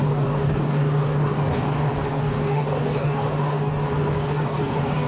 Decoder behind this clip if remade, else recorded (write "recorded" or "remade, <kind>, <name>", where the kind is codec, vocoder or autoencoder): remade, codec, DAC